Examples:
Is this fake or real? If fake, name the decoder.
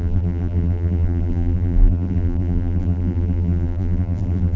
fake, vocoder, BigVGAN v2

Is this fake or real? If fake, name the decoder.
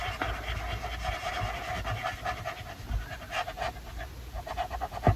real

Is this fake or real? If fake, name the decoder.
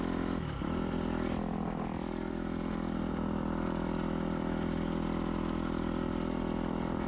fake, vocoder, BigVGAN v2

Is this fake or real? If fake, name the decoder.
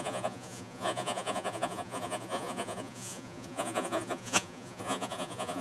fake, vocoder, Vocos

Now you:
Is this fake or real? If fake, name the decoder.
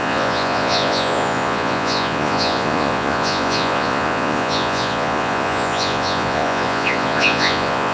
fake, vocoder, Vocos